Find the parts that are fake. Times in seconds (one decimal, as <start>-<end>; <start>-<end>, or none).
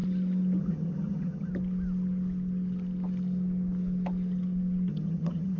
0.6-1.5; 4.9-5.6